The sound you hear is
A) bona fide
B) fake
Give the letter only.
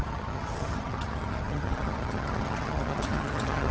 B